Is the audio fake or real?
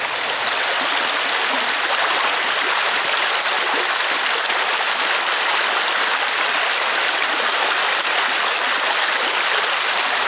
real